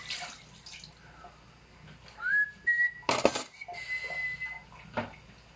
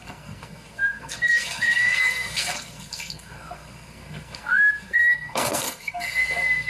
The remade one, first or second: second